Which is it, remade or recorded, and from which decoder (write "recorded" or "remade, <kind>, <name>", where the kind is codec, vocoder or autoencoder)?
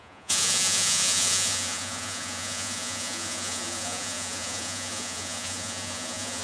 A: remade, vocoder, Vocos